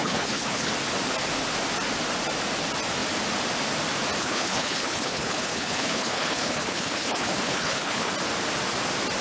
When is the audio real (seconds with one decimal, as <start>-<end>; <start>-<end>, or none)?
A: 0.7-4.2; 8.1-9.2

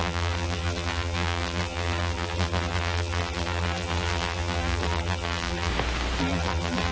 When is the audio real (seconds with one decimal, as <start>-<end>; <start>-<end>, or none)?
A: 5.7-6.2

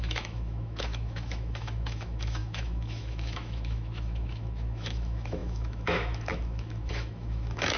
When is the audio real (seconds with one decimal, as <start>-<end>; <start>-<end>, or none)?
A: none

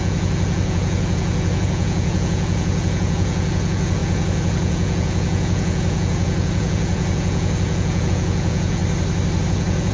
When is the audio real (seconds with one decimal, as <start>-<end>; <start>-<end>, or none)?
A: 8.8-9.5